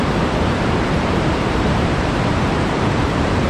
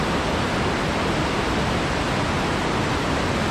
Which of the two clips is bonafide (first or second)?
second